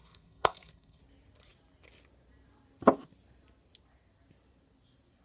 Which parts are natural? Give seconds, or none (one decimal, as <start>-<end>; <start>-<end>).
1.0-5.2